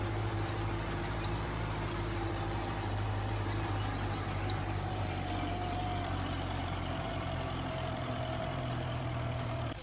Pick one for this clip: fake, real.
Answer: fake